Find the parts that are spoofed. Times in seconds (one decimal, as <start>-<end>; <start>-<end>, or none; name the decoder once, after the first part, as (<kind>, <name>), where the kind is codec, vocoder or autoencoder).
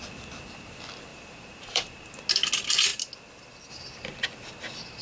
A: 1.1-2.1 (vocoder, BigVGAN v2)